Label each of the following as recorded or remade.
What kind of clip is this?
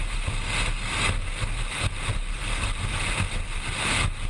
recorded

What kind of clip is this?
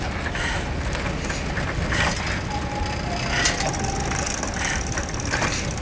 recorded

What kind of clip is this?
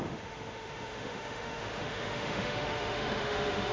remade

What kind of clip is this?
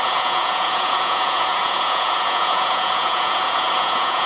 remade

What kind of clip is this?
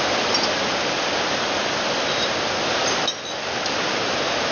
recorded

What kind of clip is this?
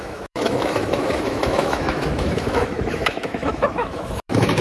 remade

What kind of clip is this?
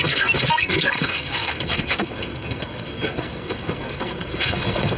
remade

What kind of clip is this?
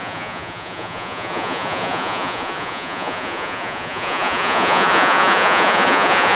remade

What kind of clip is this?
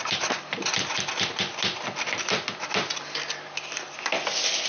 recorded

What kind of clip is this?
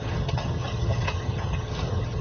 remade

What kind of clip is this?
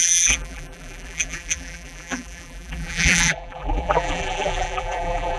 remade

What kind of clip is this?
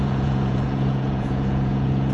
remade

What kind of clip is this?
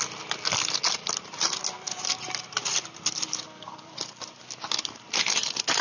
recorded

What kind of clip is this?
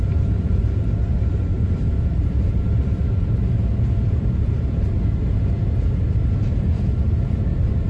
remade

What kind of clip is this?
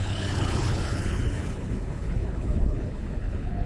remade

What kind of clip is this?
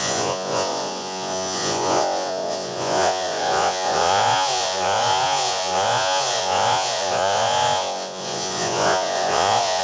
remade